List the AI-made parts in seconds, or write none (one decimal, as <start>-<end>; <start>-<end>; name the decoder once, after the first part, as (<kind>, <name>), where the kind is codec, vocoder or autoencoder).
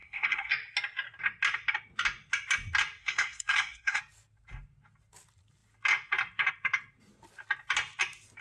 0.0-0.5 (codec, SNAC); 3.0-4.0